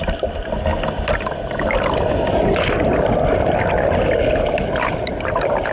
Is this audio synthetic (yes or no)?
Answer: no